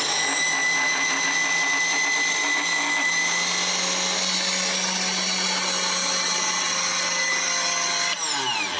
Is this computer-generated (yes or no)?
no